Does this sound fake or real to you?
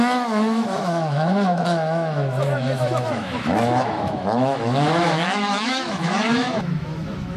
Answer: fake